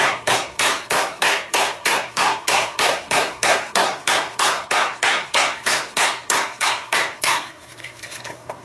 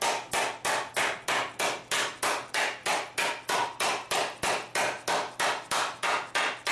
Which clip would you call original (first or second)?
second